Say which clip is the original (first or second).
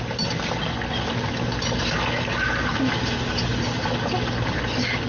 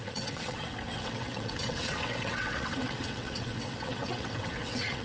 first